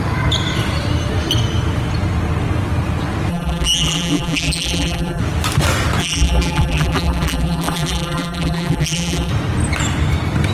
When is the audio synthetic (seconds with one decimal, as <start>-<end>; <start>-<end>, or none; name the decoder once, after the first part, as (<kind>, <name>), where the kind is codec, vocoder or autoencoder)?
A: 3.3-5.2 (vocoder, BigVGAN v2); 6.0-9.3